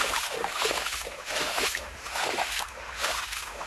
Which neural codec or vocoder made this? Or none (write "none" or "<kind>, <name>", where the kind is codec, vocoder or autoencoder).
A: autoencoder, DAC-VAE